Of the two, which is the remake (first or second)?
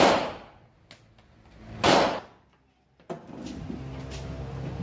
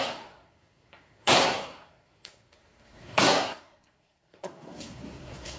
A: second